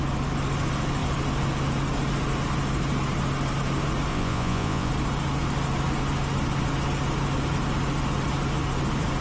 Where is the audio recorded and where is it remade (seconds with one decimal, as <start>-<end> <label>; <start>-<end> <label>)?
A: 0.0-4.1 recorded; 4.1-4.9 remade; 4.9-9.2 recorded